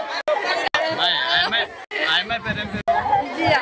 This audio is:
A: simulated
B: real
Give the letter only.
B